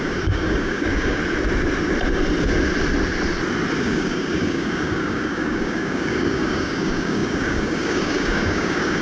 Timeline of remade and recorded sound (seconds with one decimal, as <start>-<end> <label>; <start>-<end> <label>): 0.0-1.2 remade; 1.2-3.8 recorded; 3.8-9.0 remade